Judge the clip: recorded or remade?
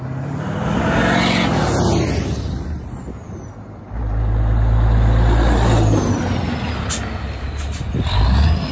recorded